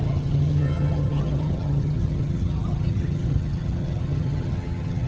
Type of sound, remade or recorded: remade